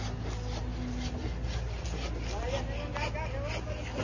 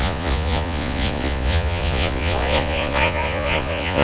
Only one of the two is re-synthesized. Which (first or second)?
second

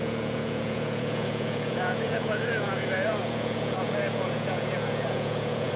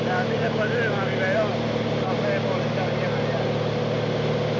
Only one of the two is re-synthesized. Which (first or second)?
first